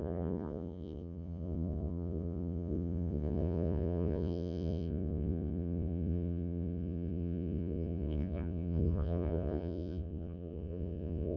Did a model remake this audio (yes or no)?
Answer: yes